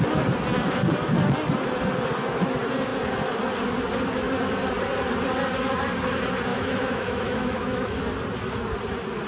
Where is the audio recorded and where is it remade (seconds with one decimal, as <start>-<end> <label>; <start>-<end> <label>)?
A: 0.0-6.5 recorded; 6.5-8.0 remade; 8.0-9.3 recorded